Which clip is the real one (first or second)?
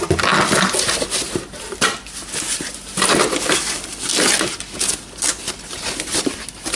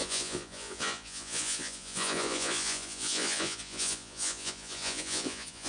first